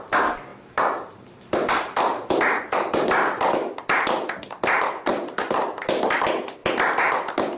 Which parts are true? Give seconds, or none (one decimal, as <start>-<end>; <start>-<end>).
6.6-7.6

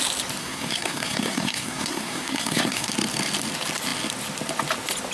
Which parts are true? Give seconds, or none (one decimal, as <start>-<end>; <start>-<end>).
0.0-0.4; 2.9-5.1

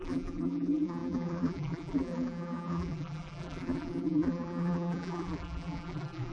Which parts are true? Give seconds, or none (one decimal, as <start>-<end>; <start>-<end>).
none

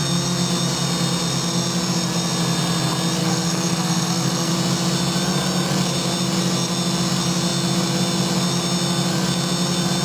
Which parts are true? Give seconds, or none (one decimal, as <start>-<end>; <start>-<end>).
0.0-3.2; 4.5-10.0